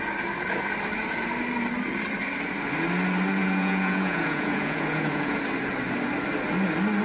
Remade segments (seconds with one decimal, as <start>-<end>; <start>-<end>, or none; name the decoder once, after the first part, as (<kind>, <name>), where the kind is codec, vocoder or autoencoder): 3.4-5.4 (vocoder, Vocos)